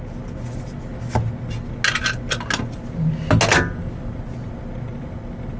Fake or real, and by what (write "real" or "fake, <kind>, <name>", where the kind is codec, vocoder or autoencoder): real